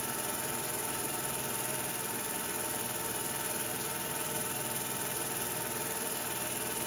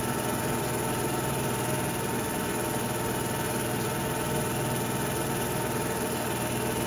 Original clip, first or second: second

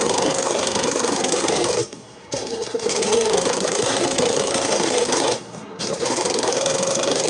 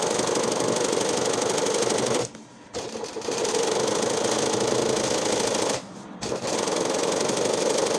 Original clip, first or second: second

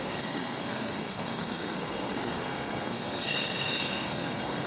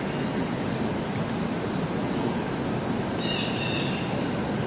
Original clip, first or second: second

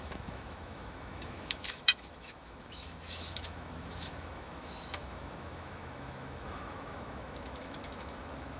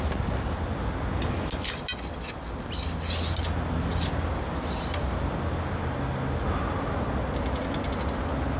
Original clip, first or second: second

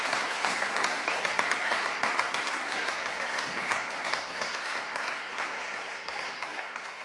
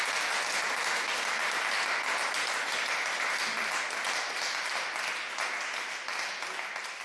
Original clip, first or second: second